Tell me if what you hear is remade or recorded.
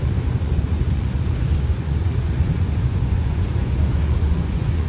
remade